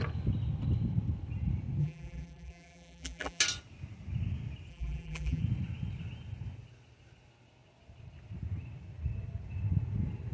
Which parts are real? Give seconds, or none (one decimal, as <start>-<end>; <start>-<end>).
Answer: 0.0-1.8; 3.4-4.7; 5.4-10.3